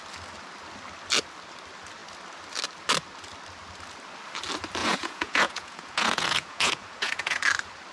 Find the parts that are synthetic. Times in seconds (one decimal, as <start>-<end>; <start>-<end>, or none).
4.8-7.4